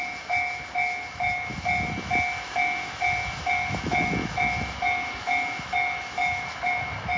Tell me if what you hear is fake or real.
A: fake